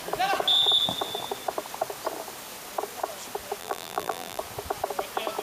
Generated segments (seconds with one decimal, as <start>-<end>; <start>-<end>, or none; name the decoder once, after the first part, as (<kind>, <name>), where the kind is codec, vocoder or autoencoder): 3.6-4.4 (vocoder, BigVGAN v2)